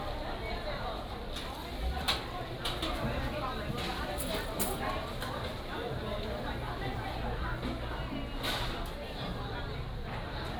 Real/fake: real